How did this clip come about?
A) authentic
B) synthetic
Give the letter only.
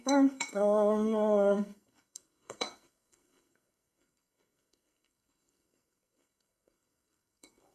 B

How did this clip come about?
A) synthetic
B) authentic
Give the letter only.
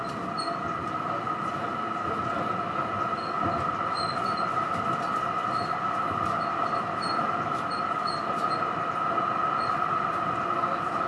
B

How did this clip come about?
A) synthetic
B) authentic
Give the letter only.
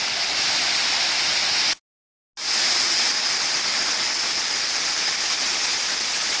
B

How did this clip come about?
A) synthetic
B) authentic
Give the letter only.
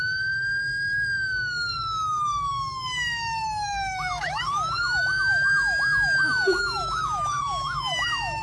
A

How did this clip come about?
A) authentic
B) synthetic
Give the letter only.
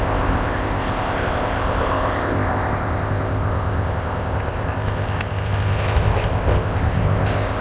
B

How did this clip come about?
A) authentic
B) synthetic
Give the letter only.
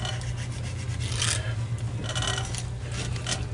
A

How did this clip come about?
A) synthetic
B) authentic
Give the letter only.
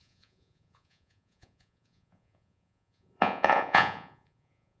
A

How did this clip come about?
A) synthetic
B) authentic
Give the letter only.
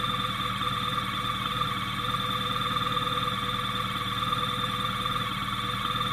B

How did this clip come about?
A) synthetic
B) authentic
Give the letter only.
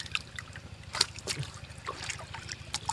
A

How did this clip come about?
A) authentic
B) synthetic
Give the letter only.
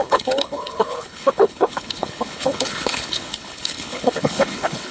B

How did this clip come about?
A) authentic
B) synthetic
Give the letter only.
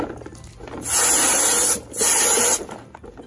A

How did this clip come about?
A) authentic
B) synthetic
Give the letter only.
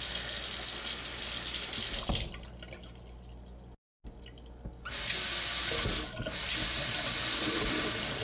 A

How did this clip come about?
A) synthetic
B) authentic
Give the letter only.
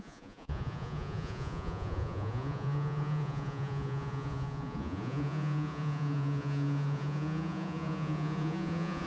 A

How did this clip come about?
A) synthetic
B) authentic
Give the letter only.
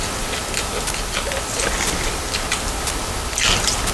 B